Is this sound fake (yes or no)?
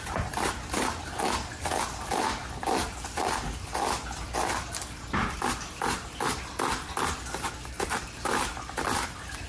no